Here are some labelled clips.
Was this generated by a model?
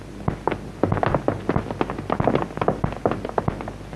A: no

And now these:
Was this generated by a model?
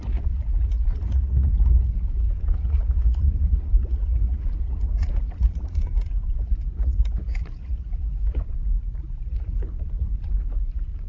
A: yes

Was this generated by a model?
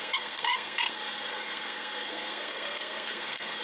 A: yes